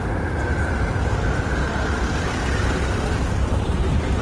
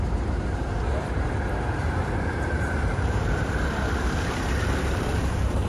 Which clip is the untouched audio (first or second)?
first